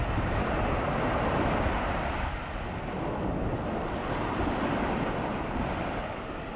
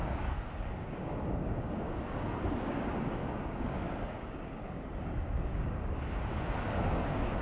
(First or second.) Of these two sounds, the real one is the first